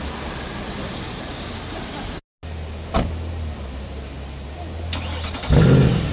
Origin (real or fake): real